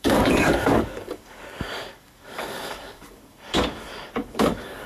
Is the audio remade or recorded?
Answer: remade